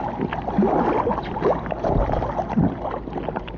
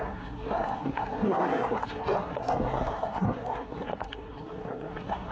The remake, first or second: second